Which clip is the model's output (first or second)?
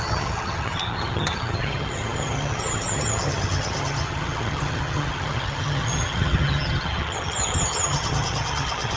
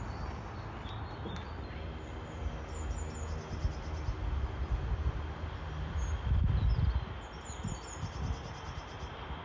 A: first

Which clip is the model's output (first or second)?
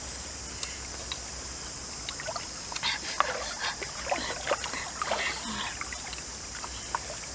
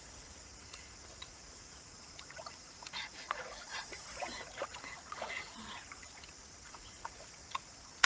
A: second